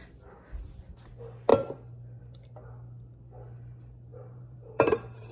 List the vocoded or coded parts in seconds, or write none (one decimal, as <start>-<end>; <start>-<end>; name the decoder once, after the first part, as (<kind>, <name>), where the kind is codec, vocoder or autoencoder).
4.1-5.3 (vocoder, BigVGAN v2)